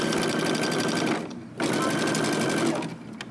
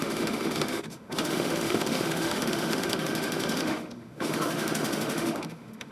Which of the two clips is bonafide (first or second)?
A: first